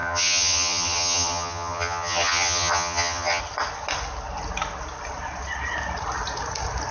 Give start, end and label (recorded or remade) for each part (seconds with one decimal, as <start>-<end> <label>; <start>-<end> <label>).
0.0-3.4 remade; 3.4-6.9 recorded